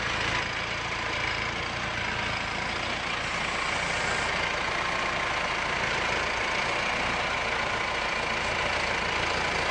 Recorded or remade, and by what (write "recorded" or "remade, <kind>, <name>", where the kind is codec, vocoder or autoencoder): recorded